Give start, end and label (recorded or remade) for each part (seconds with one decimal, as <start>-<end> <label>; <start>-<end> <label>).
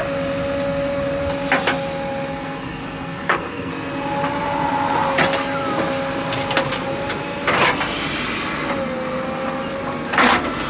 0.0-2.3 recorded; 2.3-3.7 remade; 3.7-10.7 recorded